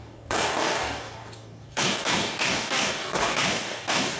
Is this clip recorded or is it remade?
remade